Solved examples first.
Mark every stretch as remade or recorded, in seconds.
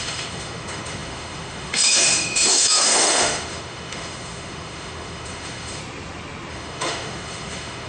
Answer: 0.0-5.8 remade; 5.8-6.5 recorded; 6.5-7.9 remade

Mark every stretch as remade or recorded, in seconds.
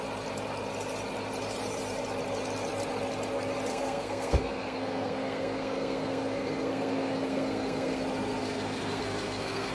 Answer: 0.0-3.7 recorded; 3.7-8.0 remade; 8.0-8.4 recorded; 8.4-9.7 remade